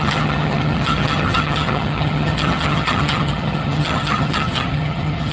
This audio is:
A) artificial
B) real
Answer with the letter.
A